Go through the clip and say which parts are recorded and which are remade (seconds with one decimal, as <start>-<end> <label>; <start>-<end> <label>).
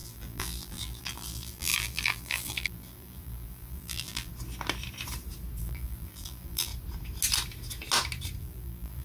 0.0-4.3 remade; 4.3-5.6 recorded; 5.6-6.7 remade; 6.7-8.4 recorded; 8.4-9.0 remade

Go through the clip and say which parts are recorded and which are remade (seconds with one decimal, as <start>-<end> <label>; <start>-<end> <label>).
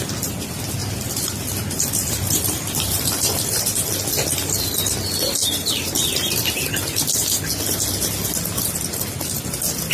0.0-0.8 recorded; 0.8-3.6 remade; 3.6-5.4 recorded; 5.4-6.3 remade; 6.3-9.9 recorded